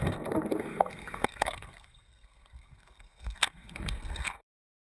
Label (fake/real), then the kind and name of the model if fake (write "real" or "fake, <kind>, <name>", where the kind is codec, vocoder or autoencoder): fake, codec, SNAC